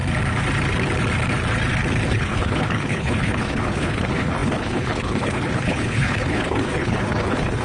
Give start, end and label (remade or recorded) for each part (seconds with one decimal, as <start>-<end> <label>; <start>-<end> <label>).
0.0-2.1 recorded; 2.1-7.6 remade